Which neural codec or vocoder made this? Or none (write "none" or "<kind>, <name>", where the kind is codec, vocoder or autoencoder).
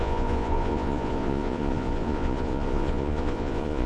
vocoder, Vocos